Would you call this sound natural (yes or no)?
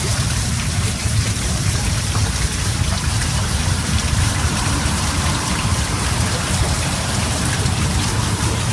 no